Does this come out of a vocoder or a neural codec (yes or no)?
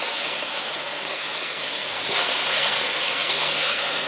yes